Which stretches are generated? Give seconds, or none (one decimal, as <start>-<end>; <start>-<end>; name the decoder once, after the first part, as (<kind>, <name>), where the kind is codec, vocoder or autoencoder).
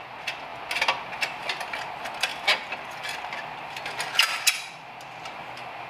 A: none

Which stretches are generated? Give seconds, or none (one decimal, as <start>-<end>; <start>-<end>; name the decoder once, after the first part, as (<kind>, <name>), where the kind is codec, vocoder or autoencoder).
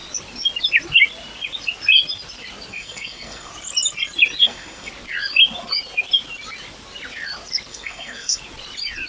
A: 2.7-3.5 (codec, SNAC); 4.4-4.9; 7.7-8.4